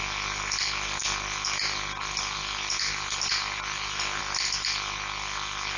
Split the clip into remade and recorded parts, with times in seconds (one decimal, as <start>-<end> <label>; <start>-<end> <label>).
0.0-5.8 recorded